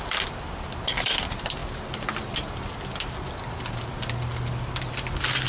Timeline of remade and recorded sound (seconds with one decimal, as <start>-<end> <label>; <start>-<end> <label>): 0.0-5.5 recorded